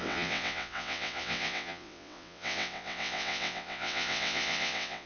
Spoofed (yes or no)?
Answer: yes